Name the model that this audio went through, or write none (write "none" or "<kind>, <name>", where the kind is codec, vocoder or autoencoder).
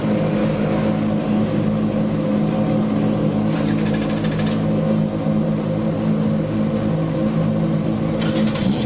none